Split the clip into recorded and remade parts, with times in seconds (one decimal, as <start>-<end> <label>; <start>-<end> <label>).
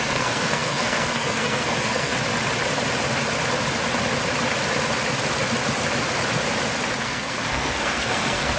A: 0.0-2.1 remade; 2.1-7.0 recorded; 7.0-8.6 remade